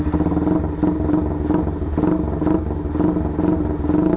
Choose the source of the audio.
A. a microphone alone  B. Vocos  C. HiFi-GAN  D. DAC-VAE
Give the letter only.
A